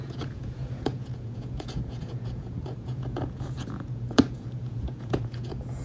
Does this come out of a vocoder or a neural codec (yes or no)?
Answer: yes